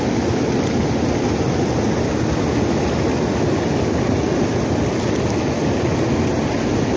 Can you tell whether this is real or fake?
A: real